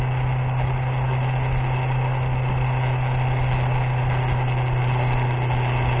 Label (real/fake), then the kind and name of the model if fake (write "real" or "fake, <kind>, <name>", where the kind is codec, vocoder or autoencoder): real